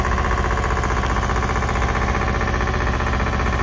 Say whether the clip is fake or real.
real